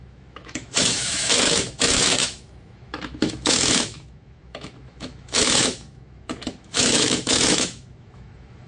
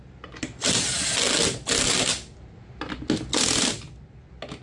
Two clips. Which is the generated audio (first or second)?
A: first